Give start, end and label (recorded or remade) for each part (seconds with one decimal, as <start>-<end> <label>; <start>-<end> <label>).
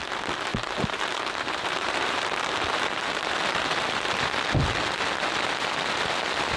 0.0-0.5 recorded; 0.5-4.5 remade; 4.5-6.6 recorded